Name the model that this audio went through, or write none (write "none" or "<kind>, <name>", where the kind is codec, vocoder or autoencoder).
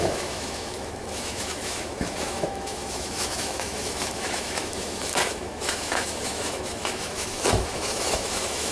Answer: autoencoder, DAC-VAE